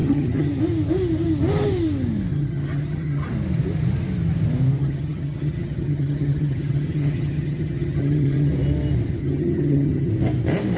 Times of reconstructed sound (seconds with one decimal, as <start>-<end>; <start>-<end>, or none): 0.0-0.5; 2.3-3.3; 4.8-8.5; 9.2-10.1